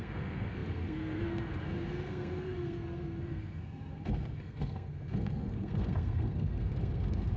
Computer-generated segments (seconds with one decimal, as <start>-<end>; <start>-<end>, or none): 0.0-7.4